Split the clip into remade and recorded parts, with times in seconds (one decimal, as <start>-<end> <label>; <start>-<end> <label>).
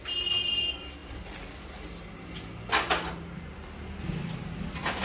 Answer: 0.0-5.0 recorded